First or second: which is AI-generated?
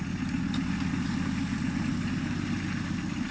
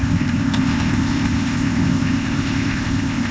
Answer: second